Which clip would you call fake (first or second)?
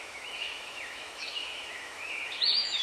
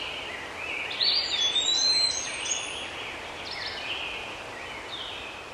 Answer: first